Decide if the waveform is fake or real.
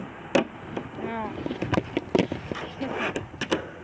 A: real